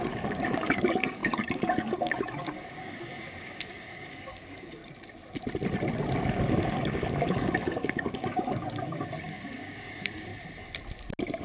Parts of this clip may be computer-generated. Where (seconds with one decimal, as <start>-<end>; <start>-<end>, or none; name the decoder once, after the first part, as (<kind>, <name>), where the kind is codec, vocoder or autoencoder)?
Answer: 0.0-4.8 (codec, DAC); 6.3-10.3